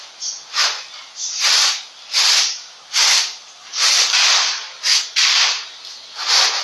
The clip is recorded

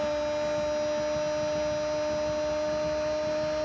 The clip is recorded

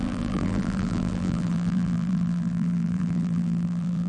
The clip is remade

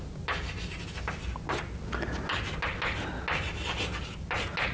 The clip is recorded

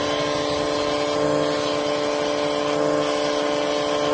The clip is recorded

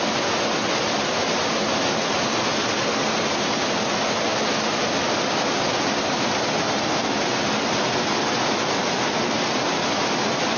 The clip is recorded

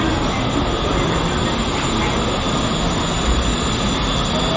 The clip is recorded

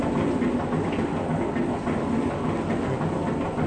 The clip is recorded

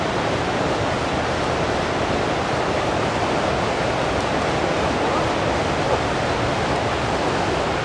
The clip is recorded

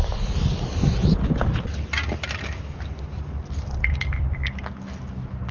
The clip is recorded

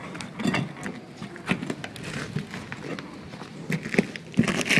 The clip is recorded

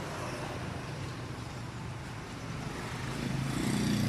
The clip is recorded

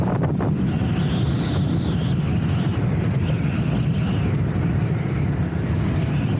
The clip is recorded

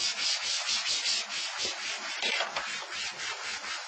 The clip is recorded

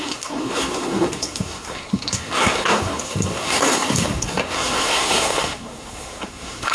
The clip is remade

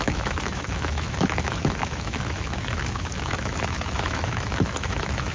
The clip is remade